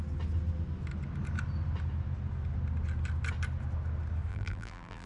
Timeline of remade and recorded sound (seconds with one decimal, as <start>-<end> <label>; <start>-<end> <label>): 0.0-4.3 recorded; 4.3-5.1 remade